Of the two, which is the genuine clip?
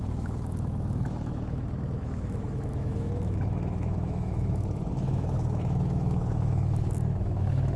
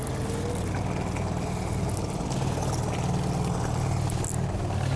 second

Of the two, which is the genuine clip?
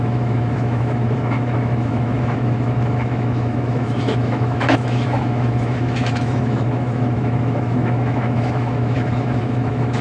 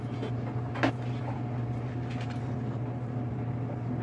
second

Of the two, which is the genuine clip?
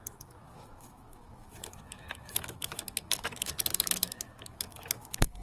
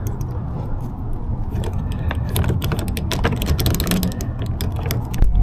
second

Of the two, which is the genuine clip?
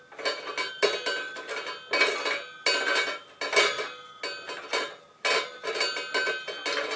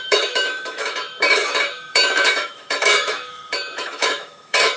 first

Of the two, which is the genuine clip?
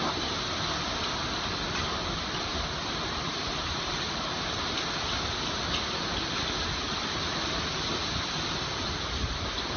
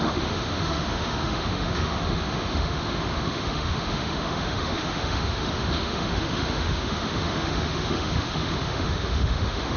first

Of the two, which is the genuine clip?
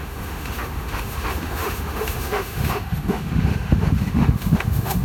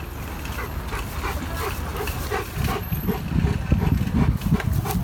second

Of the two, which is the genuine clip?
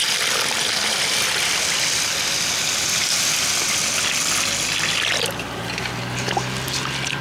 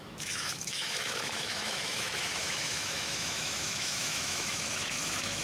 first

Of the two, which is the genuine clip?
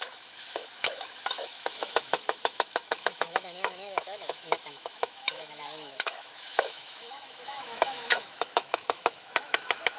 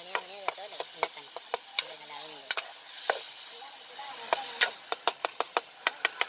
second